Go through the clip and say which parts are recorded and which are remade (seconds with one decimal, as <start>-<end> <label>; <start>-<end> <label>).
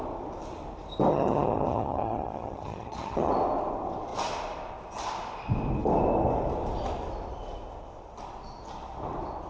0.0-1.1 recorded; 1.1-3.3 remade; 3.3-9.5 recorded